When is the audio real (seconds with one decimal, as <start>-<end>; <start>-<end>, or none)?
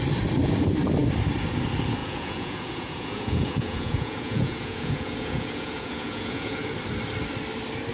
0.0-2.0; 6.7-7.9